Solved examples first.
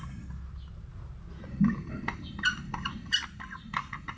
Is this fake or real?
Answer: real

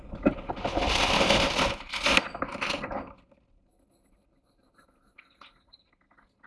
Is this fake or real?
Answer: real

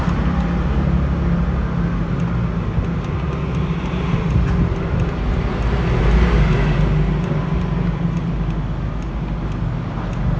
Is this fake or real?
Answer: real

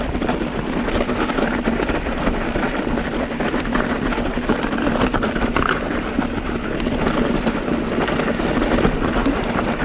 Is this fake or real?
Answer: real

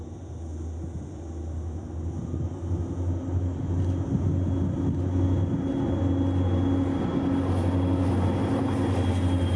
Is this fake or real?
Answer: real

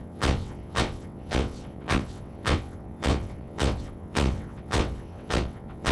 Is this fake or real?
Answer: fake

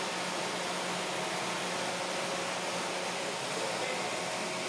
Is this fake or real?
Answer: real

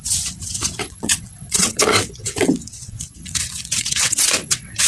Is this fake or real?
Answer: fake